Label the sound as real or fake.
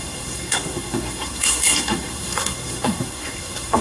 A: fake